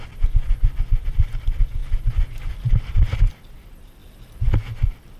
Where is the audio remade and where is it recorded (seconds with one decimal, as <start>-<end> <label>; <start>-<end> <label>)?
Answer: 0.0-5.2 recorded